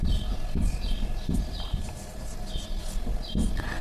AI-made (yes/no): no